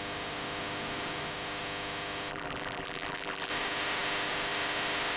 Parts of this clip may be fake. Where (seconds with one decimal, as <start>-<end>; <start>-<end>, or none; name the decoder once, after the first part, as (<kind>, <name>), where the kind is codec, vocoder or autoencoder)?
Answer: 2.3-3.5 (vocoder, BigVGAN v2)